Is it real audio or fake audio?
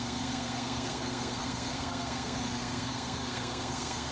fake